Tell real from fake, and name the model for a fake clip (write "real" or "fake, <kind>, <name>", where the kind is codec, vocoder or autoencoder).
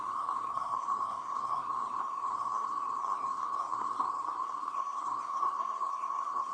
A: fake, codec, SNAC